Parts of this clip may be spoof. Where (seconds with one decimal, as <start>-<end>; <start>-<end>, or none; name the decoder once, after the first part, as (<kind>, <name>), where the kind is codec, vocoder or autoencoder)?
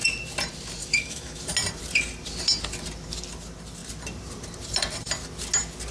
0.8-1.4 (autoencoder, DAC-VAE)